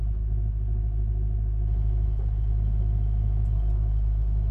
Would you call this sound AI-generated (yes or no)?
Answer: no